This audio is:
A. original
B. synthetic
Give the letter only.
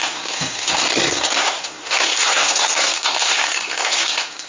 B